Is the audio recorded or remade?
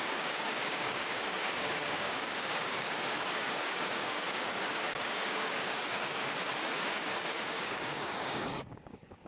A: remade